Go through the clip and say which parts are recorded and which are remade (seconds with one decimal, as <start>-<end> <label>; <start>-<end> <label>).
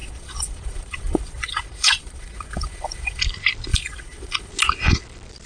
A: 0.0-3.2 remade; 3.2-3.7 recorded; 3.7-4.5 remade; 4.5-5.5 recorded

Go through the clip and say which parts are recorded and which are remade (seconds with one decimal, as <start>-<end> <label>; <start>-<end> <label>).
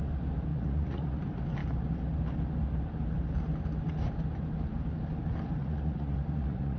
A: 0.0-0.5 recorded; 0.5-1.2 remade; 1.2-5.6 recorded; 5.6-6.8 remade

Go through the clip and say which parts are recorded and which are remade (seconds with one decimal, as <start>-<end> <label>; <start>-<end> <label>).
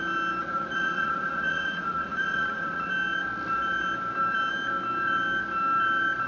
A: 0.0-0.4 recorded; 0.4-2.9 remade; 2.9-6.3 recorded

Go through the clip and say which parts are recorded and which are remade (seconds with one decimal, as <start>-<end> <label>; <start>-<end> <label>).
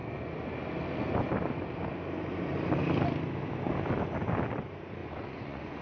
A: 0.0-5.0 recorded; 5.0-5.8 remade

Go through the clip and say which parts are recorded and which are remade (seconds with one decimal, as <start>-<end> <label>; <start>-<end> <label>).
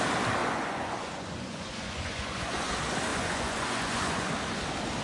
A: 0.0-0.4 recorded; 0.4-2.7 remade; 2.7-3.1 recorded; 3.1-4.3 remade; 4.3-5.0 recorded